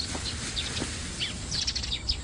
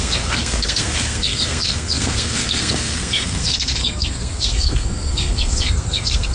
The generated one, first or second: second